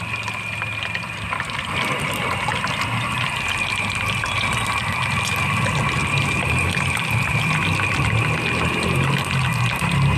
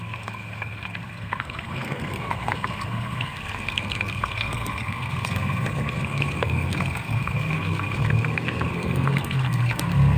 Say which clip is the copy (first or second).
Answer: second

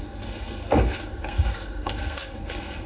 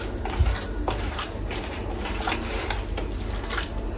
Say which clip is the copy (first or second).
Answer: first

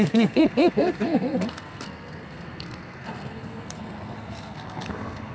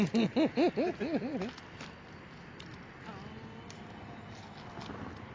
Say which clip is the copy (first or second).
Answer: first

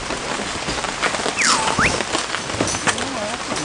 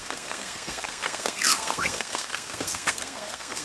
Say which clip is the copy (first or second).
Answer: second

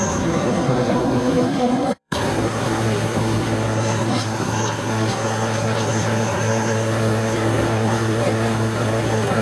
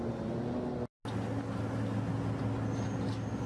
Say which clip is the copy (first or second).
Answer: first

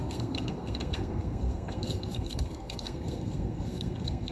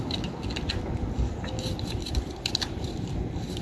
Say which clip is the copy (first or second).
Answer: first